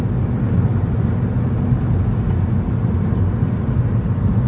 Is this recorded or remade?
recorded